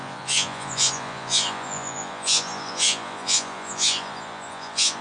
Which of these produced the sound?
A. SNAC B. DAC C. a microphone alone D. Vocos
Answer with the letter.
D